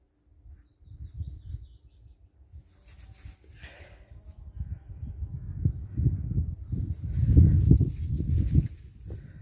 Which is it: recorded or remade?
recorded